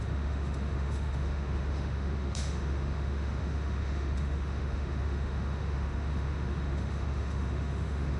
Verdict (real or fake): fake